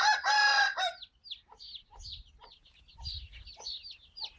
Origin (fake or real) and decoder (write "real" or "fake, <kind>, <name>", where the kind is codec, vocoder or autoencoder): real